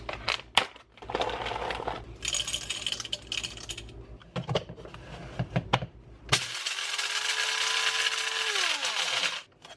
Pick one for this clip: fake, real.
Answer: real